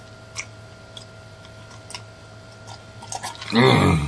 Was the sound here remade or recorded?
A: recorded